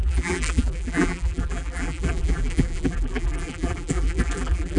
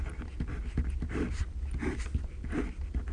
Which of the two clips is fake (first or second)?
first